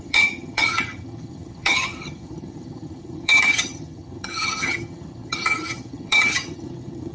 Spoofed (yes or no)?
yes